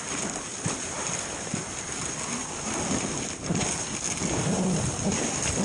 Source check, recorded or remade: recorded